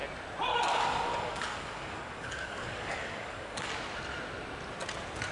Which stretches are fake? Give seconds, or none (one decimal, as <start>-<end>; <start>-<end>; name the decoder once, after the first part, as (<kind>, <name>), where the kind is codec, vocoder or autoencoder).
0.5-3.7 (codec, DAC)